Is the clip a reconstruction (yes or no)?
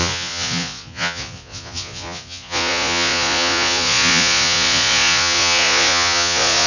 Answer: yes